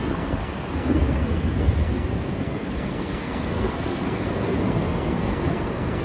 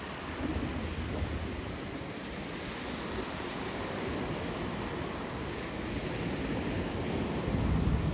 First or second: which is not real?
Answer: first